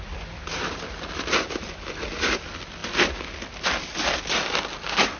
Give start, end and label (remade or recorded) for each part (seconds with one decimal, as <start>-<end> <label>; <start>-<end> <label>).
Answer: 0.0-5.2 recorded